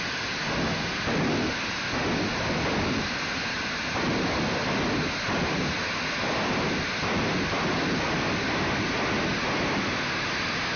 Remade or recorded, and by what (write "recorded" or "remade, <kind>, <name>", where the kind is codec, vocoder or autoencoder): recorded